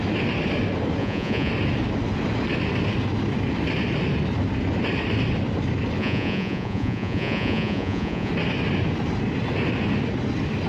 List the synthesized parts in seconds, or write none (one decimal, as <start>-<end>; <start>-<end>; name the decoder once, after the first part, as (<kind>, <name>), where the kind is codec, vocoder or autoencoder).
1.0-1.5 (vocoder, Vocos); 6.0-8.3